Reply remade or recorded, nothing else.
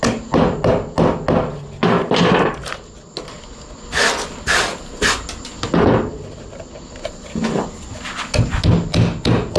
recorded